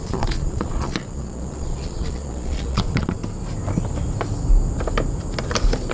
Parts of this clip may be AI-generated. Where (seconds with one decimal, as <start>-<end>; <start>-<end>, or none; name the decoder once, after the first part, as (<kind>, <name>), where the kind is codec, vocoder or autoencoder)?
0.0-3.2 (vocoder, Vocos)